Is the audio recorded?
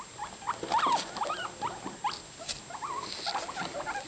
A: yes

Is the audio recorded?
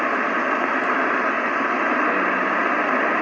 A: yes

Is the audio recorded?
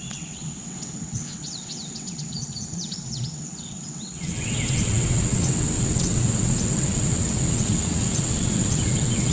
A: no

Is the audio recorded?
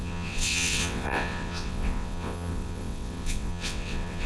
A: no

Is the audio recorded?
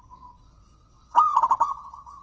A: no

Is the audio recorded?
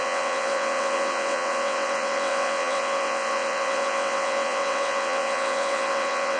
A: no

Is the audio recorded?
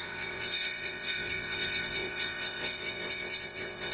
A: no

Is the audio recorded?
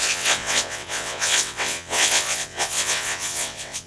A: no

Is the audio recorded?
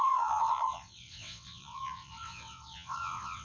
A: no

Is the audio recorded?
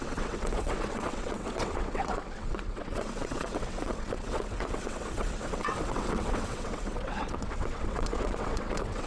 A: no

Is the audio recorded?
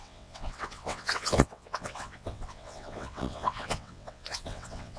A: no